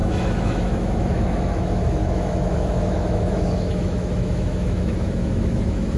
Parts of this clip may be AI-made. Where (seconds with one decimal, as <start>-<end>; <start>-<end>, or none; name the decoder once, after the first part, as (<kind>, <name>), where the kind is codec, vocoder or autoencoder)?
0.0-6.0 (autoencoder, DAC-VAE)